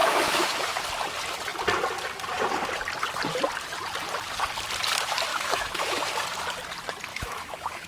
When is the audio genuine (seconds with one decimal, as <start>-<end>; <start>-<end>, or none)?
0.8-5.3; 6.1-7.1